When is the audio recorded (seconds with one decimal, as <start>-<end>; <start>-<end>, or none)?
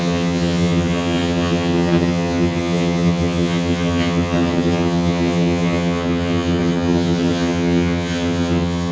none